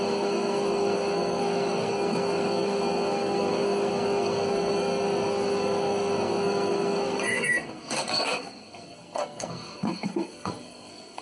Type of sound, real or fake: fake